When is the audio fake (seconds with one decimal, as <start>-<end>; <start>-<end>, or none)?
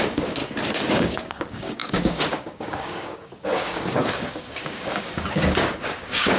0.0-0.4; 0.9-6.4